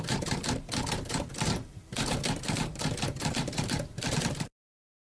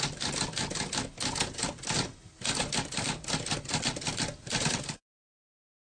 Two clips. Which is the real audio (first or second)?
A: second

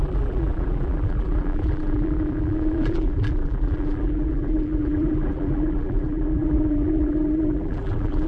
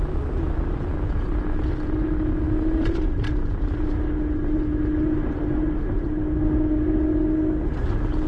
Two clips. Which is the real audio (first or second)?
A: second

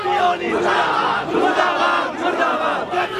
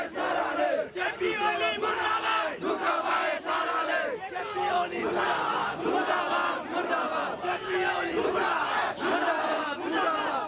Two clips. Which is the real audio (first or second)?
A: first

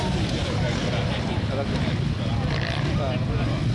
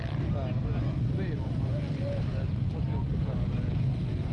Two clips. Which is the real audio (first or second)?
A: second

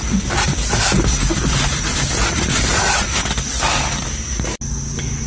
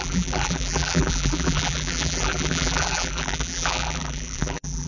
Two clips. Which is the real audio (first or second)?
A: first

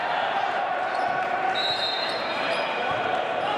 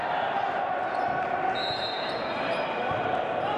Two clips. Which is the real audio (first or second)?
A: second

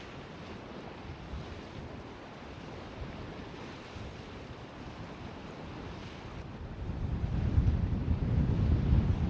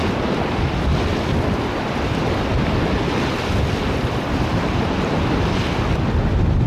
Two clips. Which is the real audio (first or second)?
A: second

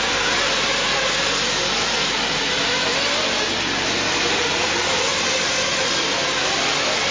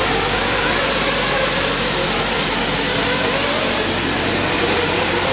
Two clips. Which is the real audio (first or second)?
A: first